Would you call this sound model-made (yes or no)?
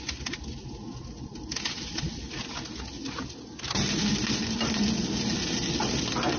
no